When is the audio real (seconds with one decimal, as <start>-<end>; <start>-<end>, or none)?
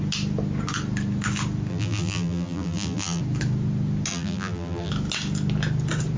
0.0-1.7; 3.2-4.1; 4.9-6.2